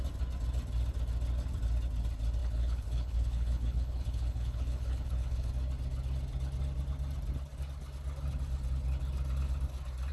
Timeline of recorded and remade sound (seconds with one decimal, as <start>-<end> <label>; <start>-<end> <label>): 0.0-2.4 recorded; 2.4-5.5 remade; 5.5-10.1 recorded